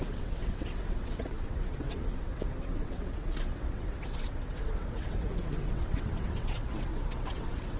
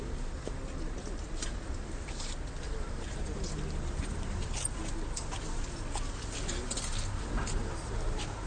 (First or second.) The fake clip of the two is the first